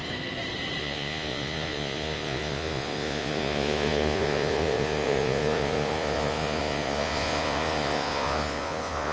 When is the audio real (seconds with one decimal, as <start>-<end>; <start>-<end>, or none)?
0.0-0.8